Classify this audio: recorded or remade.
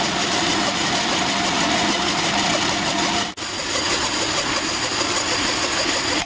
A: recorded